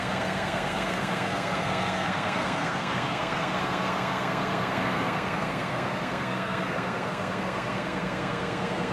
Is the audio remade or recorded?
remade